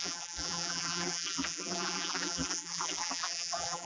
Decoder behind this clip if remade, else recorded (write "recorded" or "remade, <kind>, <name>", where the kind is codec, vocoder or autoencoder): remade, vocoder, BigVGAN v2